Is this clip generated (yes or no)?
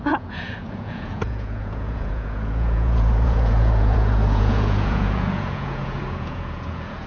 yes